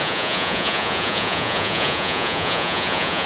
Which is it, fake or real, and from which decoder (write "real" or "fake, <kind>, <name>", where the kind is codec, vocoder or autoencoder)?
fake, vocoder, Vocos